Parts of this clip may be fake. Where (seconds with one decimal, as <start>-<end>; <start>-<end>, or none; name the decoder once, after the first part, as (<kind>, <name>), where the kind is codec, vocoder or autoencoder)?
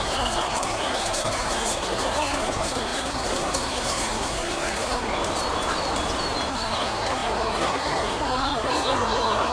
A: 0.0-5.1 (codec, SNAC); 6.5-9.5